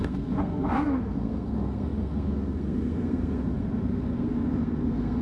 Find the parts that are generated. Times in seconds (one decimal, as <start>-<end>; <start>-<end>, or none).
0.0-5.2